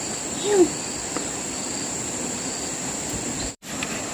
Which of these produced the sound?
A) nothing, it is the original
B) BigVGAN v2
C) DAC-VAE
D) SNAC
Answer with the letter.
B